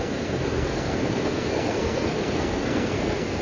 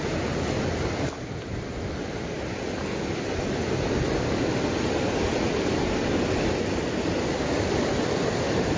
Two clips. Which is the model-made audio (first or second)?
first